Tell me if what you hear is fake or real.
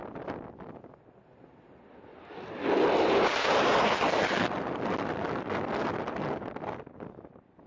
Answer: real